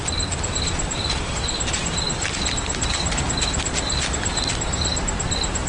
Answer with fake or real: real